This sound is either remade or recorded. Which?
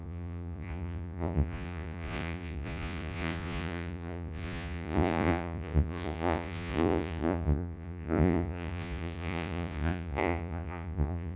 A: remade